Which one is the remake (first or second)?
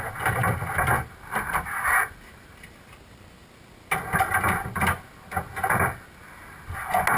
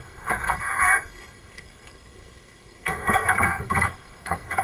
second